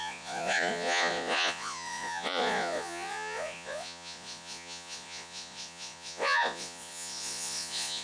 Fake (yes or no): yes